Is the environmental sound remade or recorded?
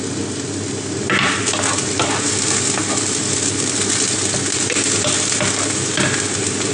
recorded